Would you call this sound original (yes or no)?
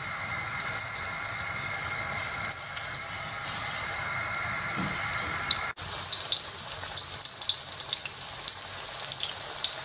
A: yes